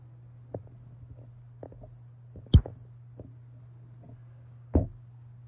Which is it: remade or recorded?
recorded